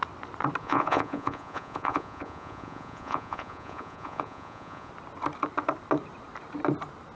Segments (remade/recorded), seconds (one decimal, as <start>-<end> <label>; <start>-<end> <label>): 0.0-0.6 recorded; 0.6-4.9 remade; 4.9-7.2 recorded